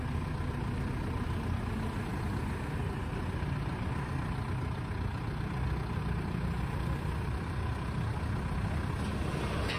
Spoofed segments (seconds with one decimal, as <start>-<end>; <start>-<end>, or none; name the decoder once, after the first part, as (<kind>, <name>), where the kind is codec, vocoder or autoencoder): none